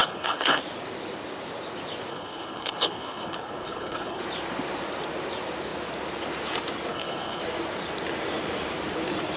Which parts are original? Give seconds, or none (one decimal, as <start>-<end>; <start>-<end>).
0.6-2.1; 4.2-6.9; 7.4-9.4